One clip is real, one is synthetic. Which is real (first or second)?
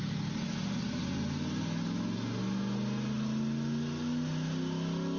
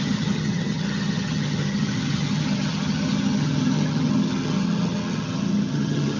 first